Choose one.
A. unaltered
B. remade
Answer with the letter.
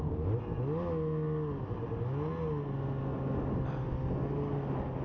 A